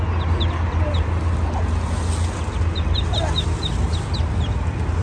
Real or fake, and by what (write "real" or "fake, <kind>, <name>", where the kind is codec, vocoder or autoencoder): real